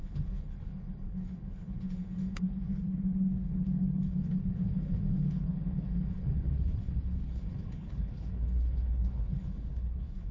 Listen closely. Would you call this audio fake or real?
fake